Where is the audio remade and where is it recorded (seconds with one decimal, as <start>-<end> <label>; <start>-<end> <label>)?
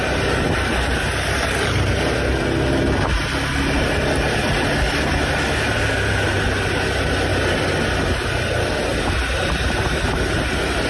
0.0-10.9 recorded